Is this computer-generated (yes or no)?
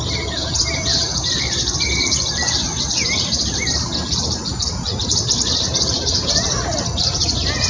yes